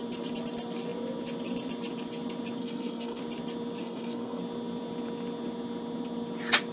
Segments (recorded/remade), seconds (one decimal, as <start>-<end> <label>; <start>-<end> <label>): 0.0-2.6 recorded; 2.6-3.2 remade; 3.2-3.8 recorded; 3.8-4.4 remade; 4.4-6.7 recorded